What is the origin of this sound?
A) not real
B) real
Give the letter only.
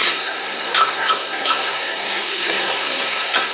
A